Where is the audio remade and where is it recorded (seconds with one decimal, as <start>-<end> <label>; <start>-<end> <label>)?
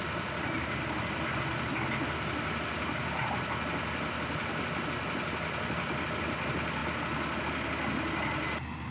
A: 0.0-8.9 recorded